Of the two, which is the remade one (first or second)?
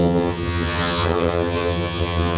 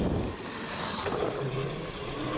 first